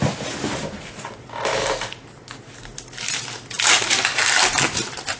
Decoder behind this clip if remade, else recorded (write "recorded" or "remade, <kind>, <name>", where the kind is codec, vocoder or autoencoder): recorded